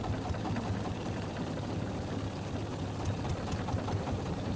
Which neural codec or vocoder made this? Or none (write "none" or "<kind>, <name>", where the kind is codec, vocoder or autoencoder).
none